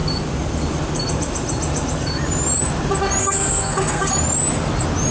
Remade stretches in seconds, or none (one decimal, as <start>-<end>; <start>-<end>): 3.2-4.1

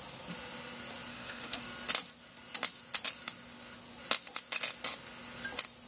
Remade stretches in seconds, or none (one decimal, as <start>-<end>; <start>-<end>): 1.1-1.6

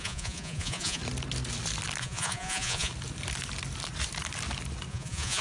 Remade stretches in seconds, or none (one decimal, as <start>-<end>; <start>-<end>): 0.0-1.0; 2.0-2.9; 4.9-5.4

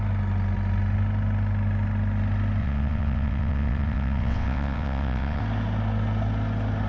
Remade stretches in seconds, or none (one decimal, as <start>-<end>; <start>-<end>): 2.6-5.4

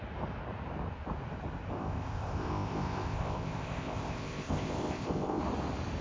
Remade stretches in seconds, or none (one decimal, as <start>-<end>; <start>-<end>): 1.8-5.4

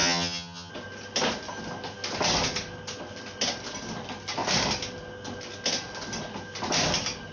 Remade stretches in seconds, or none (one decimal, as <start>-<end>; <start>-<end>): 0.0-0.7